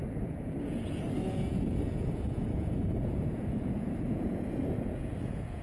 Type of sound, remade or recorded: remade